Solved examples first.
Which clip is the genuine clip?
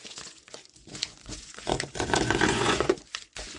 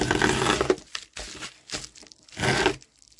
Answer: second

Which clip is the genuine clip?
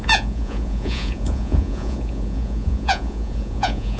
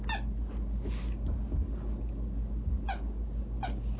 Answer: second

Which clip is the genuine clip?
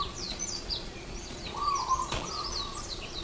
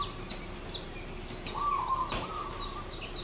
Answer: second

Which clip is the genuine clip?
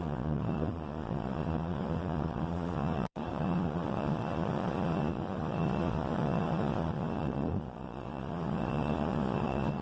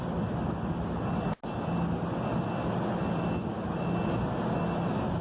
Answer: second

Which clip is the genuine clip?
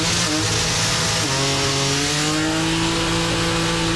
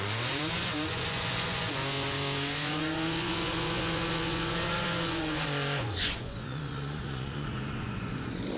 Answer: first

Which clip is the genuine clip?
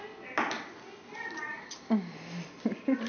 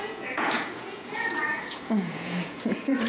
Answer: first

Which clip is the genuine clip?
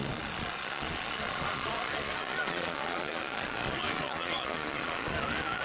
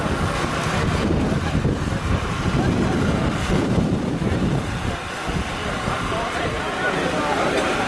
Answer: second